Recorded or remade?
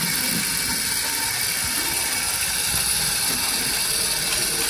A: recorded